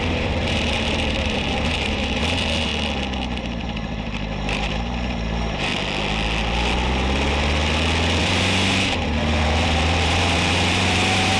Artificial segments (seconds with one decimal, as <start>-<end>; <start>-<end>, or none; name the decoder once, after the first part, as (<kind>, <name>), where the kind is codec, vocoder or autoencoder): 0.0-2.7 (vocoder, BigVGAN v2); 3.6-5.7; 8.2-11.4